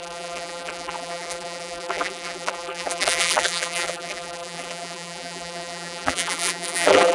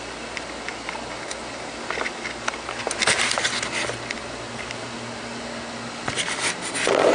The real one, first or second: second